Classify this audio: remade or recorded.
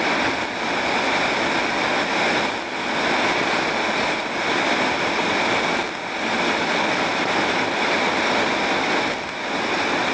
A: recorded